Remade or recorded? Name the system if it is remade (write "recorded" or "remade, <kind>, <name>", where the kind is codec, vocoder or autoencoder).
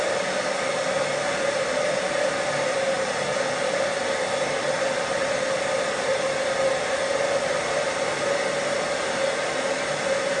recorded